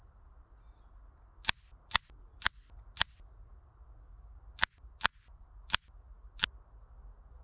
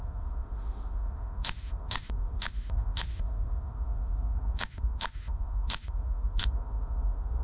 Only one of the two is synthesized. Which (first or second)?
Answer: second